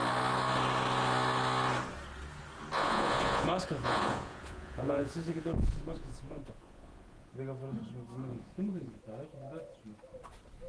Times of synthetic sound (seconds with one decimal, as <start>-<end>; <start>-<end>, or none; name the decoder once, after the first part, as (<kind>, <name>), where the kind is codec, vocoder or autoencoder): 2.8-7.3 (vocoder, Vocos); 8.3-9.0